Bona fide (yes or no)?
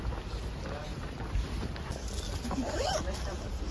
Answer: yes